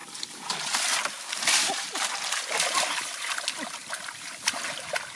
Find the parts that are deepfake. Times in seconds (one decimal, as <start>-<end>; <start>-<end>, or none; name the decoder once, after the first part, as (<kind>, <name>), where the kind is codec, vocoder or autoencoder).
0.0-2.9 (vocoder, BigVGAN v2); 3.8-4.6